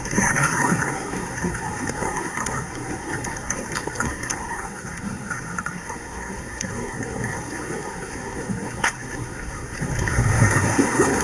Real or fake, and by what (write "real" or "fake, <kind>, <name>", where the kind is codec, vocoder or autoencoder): fake, codec, SNAC